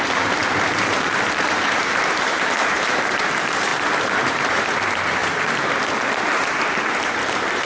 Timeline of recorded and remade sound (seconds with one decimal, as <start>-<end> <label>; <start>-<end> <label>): 0.0-7.6 remade

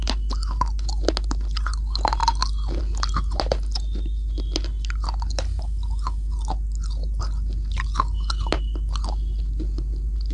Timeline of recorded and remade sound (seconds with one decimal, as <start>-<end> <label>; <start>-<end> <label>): 0.0-10.3 recorded

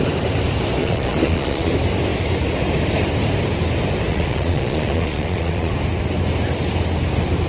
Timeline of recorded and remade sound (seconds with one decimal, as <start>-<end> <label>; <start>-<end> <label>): 0.0-0.8 recorded; 0.8-1.7 remade; 1.7-4.1 recorded; 4.1-5.7 remade; 5.7-7.5 recorded

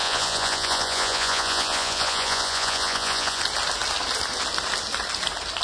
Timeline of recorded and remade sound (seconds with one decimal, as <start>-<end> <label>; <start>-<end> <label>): 0.0-3.4 remade; 3.4-5.6 recorded